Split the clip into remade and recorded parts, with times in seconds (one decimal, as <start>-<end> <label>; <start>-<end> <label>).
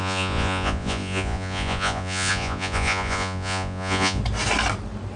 0.0-4.2 remade; 4.2-5.2 recorded